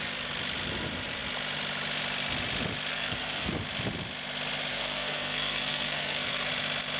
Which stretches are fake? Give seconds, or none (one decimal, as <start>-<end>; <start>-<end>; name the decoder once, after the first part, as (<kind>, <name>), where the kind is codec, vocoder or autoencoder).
2.9-3.5 (codec, SNAC); 4.7-6.5